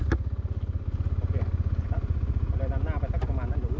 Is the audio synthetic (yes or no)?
no